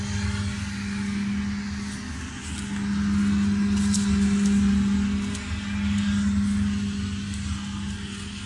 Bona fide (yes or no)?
yes